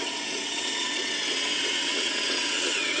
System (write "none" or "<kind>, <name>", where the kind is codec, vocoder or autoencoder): vocoder, WaveNeXt